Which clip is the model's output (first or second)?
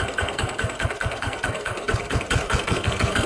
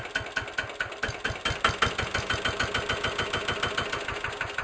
first